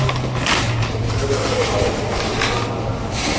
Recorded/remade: recorded